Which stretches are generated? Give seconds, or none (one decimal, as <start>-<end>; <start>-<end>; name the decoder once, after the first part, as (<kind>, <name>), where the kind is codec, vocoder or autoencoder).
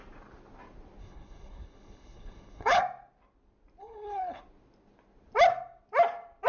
1.0-2.8 (codec, HILCodec); 3.8-4.4